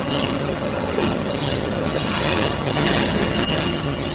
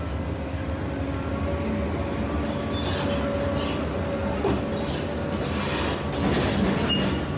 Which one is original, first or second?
second